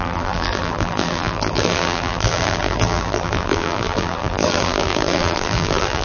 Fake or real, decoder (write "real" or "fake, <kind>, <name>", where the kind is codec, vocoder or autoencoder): fake, vocoder, BigVGAN v2